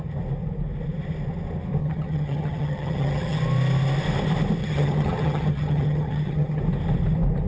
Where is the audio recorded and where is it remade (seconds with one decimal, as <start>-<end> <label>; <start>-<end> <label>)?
0.0-1.8 recorded; 1.8-3.4 remade; 3.4-4.6 recorded; 4.6-6.6 remade; 6.6-7.5 recorded